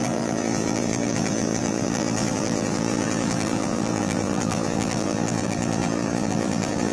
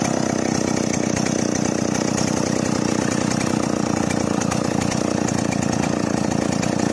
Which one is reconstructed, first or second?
first